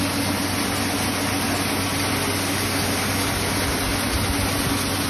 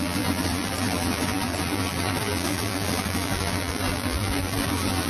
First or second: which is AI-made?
second